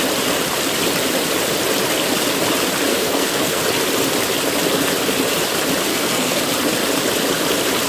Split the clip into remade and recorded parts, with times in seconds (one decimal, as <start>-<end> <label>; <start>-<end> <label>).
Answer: 0.0-2.9 recorded; 2.9-3.6 remade; 3.6-5.9 recorded; 5.9-6.4 remade; 6.4-7.9 recorded